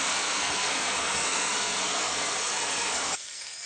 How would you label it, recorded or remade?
remade